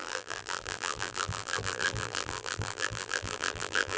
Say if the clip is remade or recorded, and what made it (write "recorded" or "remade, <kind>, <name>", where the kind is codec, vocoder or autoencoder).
remade, vocoder, BigVGAN v2